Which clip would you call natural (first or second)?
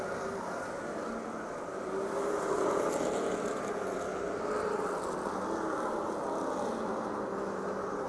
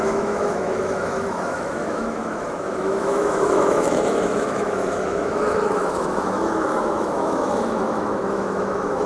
first